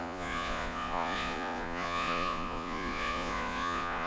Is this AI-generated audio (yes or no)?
yes